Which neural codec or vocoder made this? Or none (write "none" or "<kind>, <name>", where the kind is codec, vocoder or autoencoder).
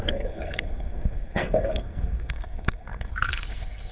codec, SNAC